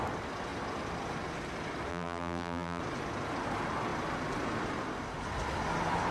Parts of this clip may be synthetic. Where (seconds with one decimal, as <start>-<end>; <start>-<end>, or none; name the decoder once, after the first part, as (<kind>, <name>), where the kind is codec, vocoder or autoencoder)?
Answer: 1.9-2.8 (vocoder, BigVGAN v2)